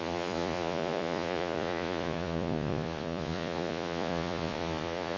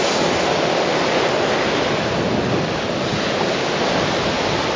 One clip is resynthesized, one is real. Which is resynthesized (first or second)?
first